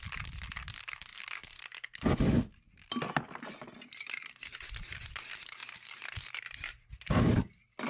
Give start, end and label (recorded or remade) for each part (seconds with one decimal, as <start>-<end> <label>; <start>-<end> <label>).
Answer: 0.0-5.6 recorded; 5.6-6.9 remade; 6.9-7.9 recorded